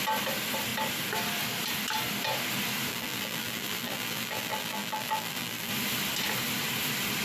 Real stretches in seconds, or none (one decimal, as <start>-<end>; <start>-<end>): 0.0-2.9; 5.7-7.2

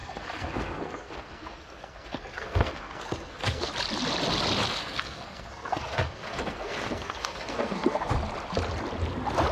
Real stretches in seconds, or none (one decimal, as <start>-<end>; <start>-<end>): 3.7-4.8; 8.1-9.5

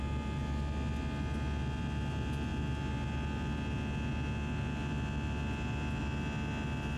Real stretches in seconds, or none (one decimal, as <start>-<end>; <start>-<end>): 0.0-7.0

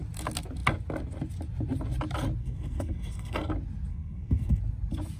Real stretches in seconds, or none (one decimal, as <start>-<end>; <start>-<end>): 0.0-2.4; 3.5-3.9; 4.6-5.2

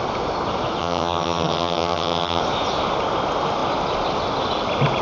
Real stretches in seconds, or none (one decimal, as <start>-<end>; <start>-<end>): 0.0-0.8; 2.4-5.0

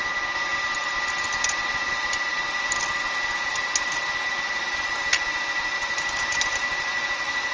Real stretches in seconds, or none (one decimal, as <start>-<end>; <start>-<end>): 0.0-7.5